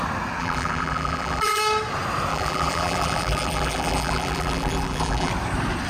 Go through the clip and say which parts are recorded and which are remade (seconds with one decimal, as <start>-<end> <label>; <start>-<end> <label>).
0.0-0.4 recorded; 0.4-1.6 remade; 1.6-2.3 recorded; 2.3-5.3 remade; 5.3-5.9 recorded